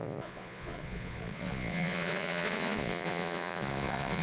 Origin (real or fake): fake